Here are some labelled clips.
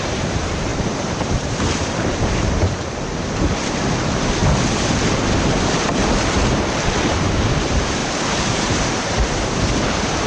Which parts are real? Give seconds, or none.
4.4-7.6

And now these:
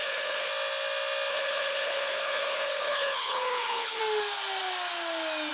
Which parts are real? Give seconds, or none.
0.5-1.3; 4.0-5.5

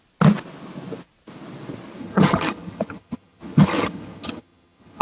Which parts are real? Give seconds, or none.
0.0-2.0